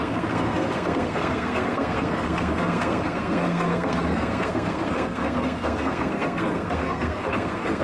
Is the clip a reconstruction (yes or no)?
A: yes